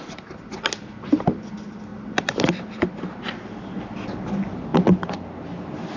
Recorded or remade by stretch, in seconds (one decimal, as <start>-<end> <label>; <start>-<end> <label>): 0.0-6.0 recorded